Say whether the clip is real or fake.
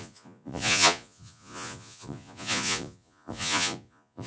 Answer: fake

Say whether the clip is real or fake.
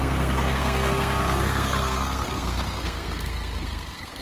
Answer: fake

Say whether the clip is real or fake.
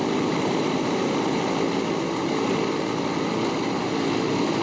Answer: real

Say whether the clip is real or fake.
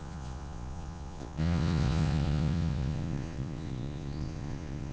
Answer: fake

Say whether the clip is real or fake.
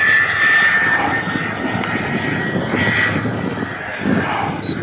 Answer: real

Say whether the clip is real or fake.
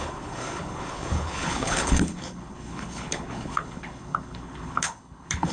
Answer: fake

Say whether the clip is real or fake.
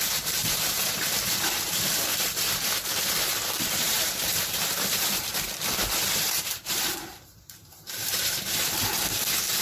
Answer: fake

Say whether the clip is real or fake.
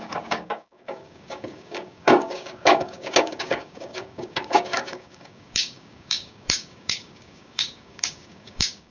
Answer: fake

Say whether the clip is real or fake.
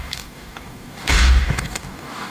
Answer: fake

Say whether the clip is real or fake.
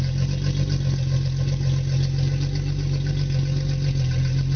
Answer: real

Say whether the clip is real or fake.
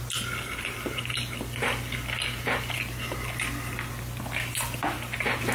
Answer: real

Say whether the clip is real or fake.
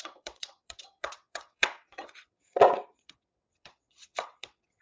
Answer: fake